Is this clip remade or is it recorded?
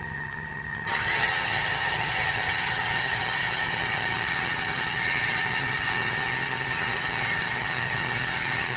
remade